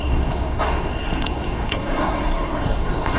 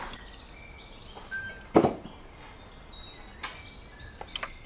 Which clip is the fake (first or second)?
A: first